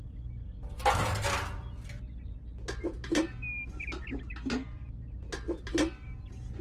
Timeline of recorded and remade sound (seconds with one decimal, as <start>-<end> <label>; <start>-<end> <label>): 0.0-6.6 recorded